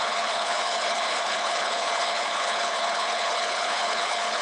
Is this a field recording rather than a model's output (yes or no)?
no